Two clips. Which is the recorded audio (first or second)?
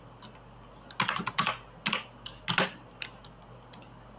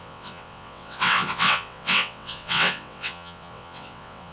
first